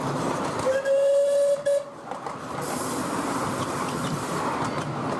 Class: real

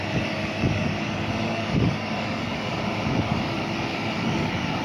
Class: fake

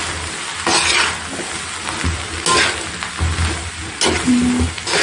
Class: real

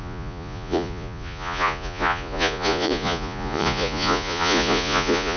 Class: fake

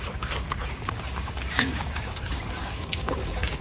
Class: fake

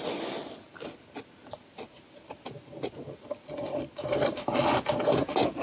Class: real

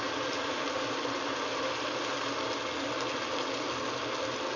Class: real